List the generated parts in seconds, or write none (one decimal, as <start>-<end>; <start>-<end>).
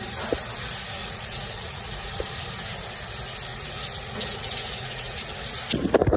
1.0-2.2; 3.5-5.3